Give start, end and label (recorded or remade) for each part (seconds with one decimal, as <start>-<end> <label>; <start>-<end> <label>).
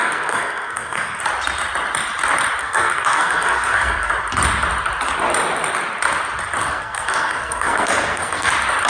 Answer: 0.0-1.2 remade; 1.2-2.6 recorded; 2.6-4.1 remade; 4.1-6.7 recorded; 6.7-8.5 remade; 8.5-8.9 recorded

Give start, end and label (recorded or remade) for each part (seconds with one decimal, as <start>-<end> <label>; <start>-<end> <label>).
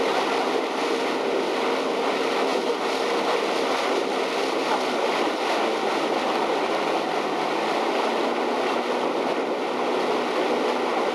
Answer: 0.0-11.1 recorded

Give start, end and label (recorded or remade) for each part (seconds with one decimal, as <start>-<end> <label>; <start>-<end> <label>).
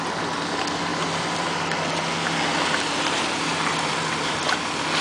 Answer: 0.0-5.0 recorded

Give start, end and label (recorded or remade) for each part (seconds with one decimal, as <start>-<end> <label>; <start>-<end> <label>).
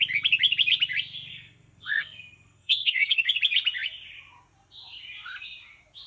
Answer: 0.0-1.3 recorded; 1.3-3.3 remade; 3.3-6.1 recorded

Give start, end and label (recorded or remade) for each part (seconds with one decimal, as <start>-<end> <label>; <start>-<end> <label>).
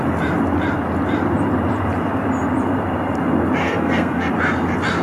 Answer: 0.0-3.6 recorded; 3.6-4.3 remade; 4.3-5.0 recorded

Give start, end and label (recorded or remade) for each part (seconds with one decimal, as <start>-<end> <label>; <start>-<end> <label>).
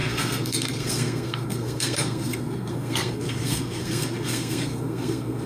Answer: 0.0-5.5 remade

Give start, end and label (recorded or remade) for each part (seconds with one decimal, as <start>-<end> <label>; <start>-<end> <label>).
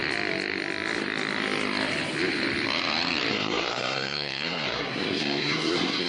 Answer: 0.0-3.3 recorded; 3.3-6.1 remade